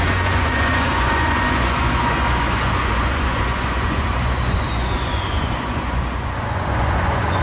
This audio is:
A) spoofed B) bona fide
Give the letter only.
A